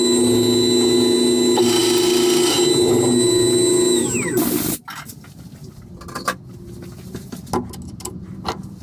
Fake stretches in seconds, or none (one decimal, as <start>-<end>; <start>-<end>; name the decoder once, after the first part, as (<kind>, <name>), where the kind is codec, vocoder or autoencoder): none